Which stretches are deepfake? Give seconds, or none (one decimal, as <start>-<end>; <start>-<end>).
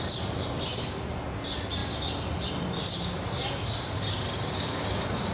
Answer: none